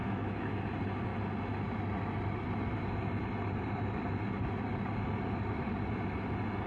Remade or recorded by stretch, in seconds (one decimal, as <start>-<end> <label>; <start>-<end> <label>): 0.0-0.6 remade; 0.6-6.7 recorded